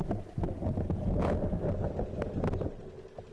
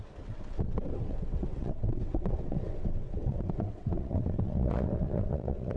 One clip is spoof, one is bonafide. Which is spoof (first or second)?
second